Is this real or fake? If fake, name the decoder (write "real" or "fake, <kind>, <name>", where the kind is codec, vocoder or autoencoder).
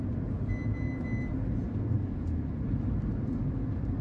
real